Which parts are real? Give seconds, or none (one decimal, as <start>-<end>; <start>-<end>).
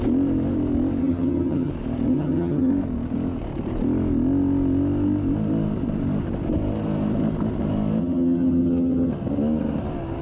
0.0-1.0; 1.7-2.1; 2.7-8.0; 9.1-10.2